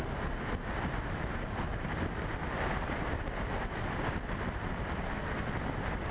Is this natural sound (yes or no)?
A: yes